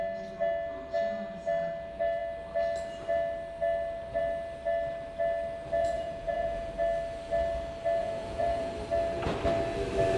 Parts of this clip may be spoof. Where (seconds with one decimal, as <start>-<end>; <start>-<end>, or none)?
5.8-6.7; 8.0-8.7